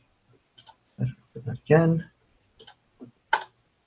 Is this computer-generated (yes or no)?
no